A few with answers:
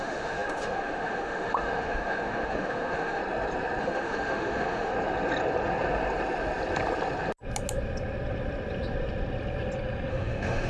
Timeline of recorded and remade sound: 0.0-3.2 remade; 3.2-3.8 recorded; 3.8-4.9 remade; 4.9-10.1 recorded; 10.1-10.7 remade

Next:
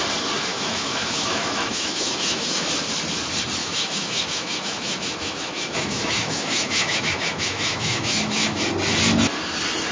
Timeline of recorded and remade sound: 0.0-0.5 recorded; 0.5-2.7 remade; 2.7-3.6 recorded; 3.6-8.6 remade; 8.6-9.9 recorded

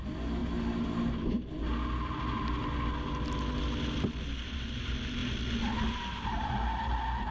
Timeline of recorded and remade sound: 0.0-7.3 recorded

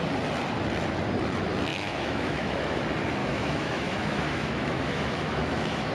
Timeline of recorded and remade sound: 0.0-1.7 recorded; 1.7-2.8 remade; 2.8-3.2 recorded; 3.2-5.9 remade

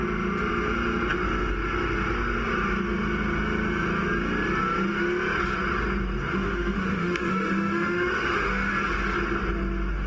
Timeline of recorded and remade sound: 0.0-6.3 recorded; 6.3-8.7 remade; 8.7-10.1 recorded